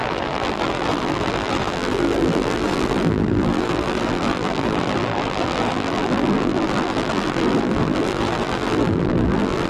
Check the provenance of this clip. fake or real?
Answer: fake